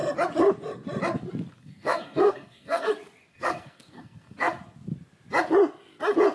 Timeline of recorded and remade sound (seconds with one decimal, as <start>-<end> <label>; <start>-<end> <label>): 0.0-1.6 recorded; 1.6-2.9 remade; 2.9-3.3 recorded; 3.3-4.5 remade; 4.5-6.3 recorded